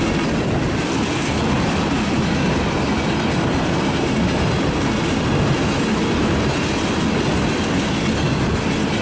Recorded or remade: recorded